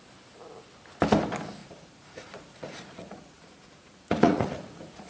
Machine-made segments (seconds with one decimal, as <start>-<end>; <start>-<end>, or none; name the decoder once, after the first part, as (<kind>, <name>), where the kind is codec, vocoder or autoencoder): 1.6-5.1 (vocoder, Vocos)